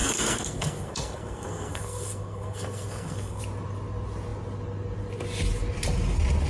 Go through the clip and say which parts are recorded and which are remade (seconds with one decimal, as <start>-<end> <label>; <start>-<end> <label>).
0.0-3.4 remade; 3.4-6.5 recorded